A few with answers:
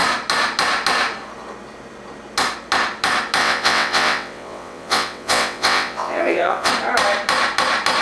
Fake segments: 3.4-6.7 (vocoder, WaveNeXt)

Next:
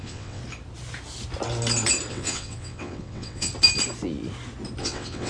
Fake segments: 0.0-0.4 (vocoder, WaveNeXt); 2.1-3.5; 4.8-5.3

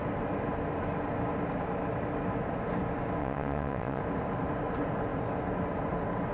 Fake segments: 3.2-4.0 (vocoder, WaveNeXt)

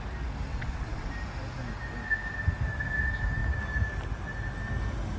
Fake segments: 0.5-1.1 (vocoder, WaveNeXt)

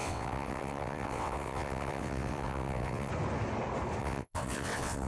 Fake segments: 0.0-3.1 (vocoder, WaveNeXt); 4.0-5.1

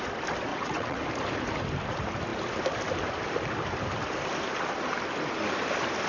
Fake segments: 0.5-1.0 (vocoder, WaveNeXt)